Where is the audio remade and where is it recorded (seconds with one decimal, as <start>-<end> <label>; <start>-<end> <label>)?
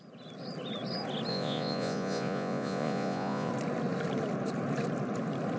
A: 0.0-1.3 recorded; 1.3-3.5 remade; 3.5-5.6 recorded